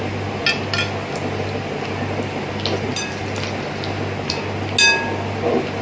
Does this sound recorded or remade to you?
recorded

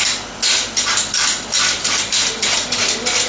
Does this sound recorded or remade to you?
recorded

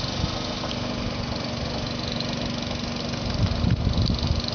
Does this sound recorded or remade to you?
recorded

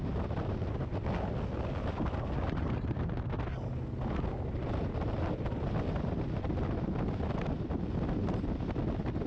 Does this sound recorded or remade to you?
recorded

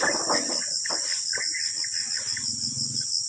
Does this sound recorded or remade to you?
recorded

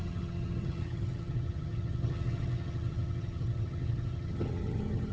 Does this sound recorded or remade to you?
remade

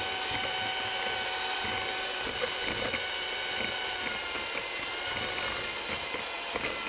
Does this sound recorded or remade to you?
recorded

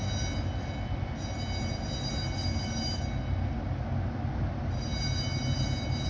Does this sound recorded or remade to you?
recorded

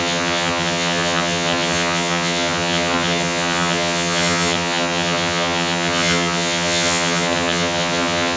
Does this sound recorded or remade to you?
remade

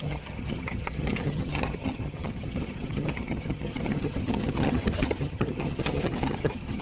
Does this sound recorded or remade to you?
remade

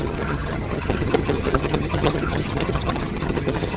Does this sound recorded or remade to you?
remade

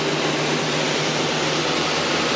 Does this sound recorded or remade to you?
recorded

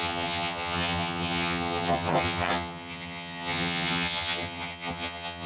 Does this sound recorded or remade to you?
remade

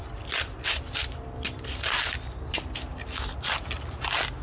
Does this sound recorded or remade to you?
recorded